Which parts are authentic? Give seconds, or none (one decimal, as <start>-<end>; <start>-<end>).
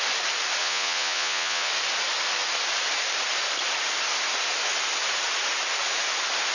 0.0-0.6; 1.7-6.5